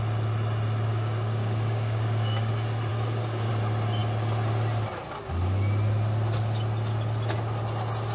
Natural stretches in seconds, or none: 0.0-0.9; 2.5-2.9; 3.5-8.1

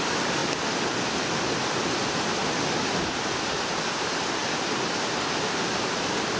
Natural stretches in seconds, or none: 0.0-6.4

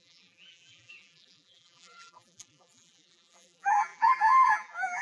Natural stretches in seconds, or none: none

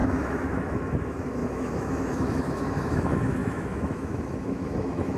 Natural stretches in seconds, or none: none

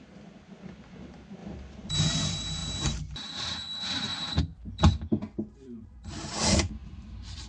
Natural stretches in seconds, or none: 1.4-2.0; 4.1-4.8

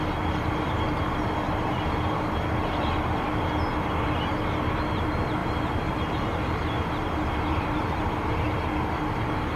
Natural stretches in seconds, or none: 0.0-5.4; 8.0-9.6